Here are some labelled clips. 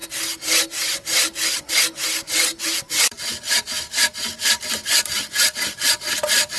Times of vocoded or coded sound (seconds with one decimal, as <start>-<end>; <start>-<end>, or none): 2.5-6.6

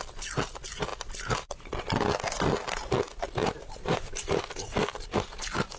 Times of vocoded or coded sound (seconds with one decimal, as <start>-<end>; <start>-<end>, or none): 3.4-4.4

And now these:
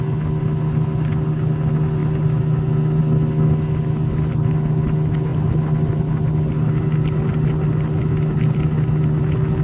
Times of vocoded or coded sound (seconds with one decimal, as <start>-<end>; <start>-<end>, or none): none

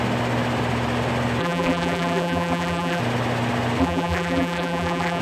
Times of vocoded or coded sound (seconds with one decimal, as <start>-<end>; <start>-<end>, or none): 1.4-3.0; 3.8-5.2